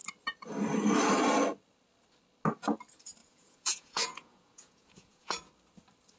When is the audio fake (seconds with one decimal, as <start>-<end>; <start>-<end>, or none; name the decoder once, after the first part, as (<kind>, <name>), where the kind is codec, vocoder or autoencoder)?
3.2-5.5 (vocoder, Vocos)